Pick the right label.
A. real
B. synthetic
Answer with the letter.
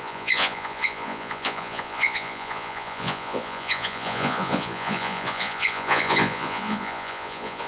B